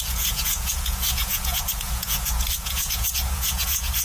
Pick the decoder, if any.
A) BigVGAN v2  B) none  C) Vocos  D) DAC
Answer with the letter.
C